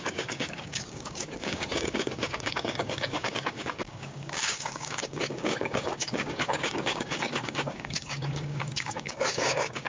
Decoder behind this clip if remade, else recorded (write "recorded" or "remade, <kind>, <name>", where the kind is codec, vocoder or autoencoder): remade, codec, DAC